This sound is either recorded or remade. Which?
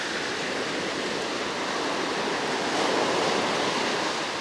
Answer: recorded